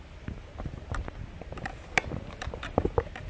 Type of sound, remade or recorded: recorded